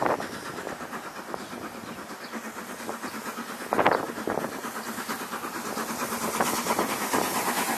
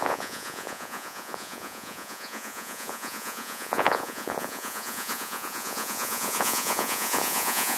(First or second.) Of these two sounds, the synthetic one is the second